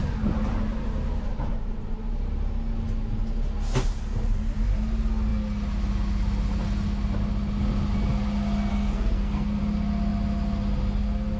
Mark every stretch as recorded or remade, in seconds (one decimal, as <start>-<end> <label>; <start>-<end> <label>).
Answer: 0.0-8.7 recorded; 8.7-9.6 remade; 9.6-11.4 recorded